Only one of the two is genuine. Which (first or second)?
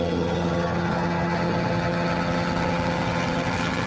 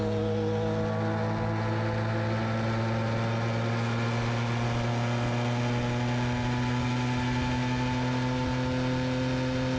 second